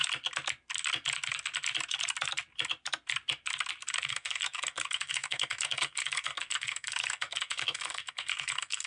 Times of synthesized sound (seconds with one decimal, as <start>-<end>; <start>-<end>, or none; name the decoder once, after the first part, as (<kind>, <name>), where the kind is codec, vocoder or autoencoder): 4.0-8.9 (codec, SNAC)